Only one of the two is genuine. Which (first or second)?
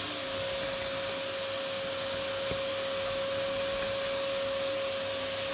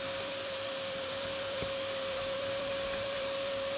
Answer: first